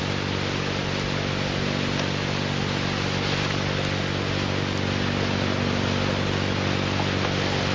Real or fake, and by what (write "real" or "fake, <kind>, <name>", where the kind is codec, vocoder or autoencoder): real